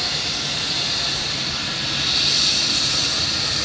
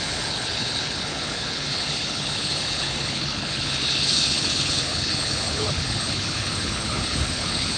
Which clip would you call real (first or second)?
first